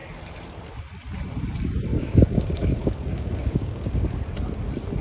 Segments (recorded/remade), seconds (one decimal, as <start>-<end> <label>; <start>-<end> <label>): 0.0-1.9 recorded; 1.9-4.2 remade; 4.2-5.0 recorded